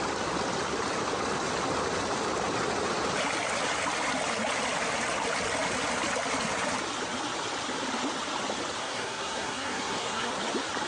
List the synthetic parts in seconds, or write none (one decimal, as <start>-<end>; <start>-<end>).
8.8-10.3